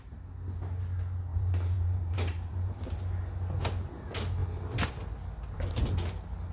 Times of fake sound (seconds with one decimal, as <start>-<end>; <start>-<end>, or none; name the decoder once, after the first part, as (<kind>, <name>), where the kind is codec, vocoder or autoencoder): 1.3-2.9 (vocoder, BigVGAN v2)